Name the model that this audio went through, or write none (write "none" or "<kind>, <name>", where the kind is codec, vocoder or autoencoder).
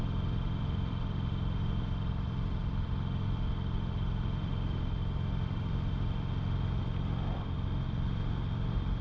vocoder, BigVGAN v2